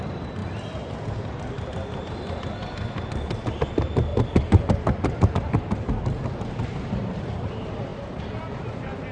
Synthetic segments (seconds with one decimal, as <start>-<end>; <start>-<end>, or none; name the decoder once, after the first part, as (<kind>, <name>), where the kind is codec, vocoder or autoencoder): none